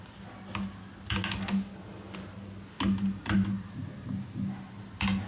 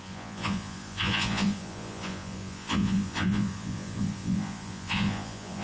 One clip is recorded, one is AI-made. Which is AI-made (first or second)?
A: second